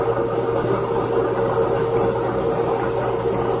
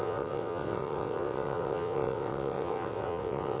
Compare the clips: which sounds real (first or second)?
first